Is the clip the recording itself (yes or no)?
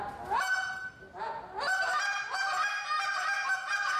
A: yes